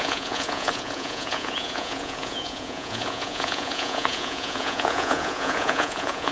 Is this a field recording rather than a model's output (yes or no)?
no